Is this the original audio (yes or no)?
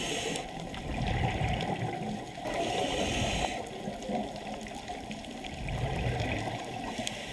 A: yes